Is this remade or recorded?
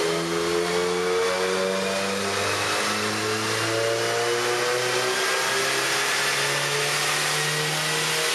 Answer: recorded